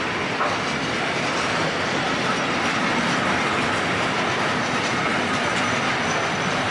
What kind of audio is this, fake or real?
real